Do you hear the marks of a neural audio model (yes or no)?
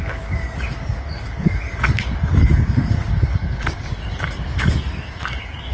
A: yes